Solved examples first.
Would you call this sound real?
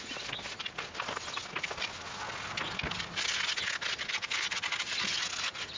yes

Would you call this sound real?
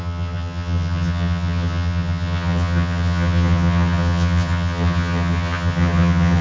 no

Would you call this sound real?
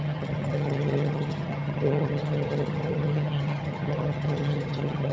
no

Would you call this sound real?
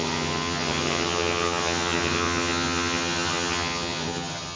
no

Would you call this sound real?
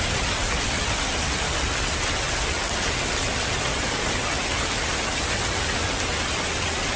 yes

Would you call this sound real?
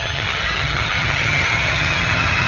no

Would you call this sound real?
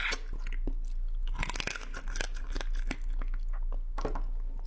yes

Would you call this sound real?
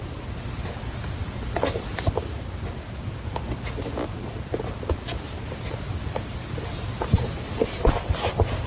yes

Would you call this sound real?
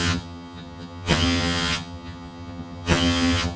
no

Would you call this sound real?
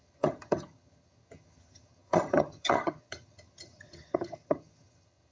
no